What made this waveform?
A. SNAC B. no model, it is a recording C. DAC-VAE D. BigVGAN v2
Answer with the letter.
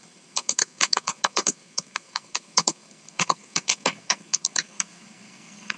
A